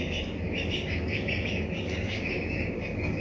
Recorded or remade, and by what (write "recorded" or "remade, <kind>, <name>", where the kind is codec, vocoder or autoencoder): remade, codec, DAC